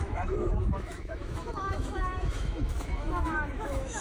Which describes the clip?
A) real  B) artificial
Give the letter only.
B